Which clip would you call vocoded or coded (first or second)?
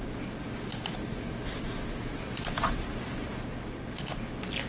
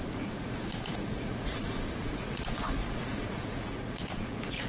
second